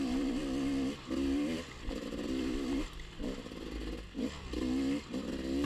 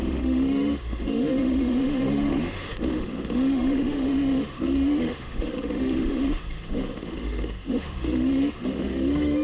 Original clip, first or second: first